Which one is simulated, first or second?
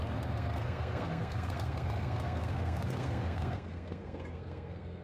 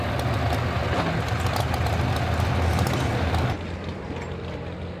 first